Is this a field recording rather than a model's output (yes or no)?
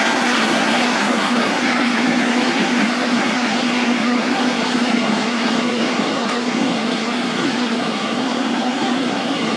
no